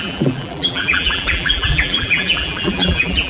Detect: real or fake fake